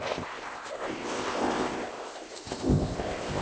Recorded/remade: remade